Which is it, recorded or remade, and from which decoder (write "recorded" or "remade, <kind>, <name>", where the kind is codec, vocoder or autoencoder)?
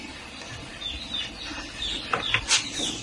recorded